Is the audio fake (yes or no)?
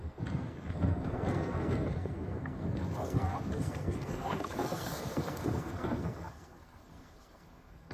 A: yes